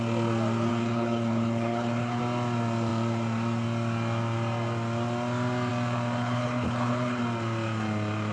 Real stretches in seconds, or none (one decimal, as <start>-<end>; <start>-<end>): 0.0-0.7; 2.2-6.2; 7.2-8.3